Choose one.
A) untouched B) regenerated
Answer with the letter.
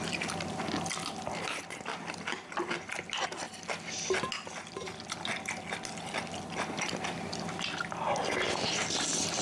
A